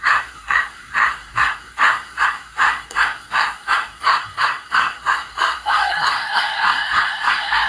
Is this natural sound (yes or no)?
no